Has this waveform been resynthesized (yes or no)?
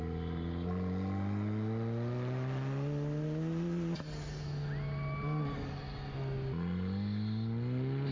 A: no